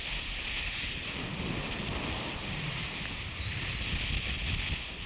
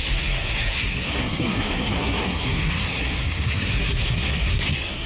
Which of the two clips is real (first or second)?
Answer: first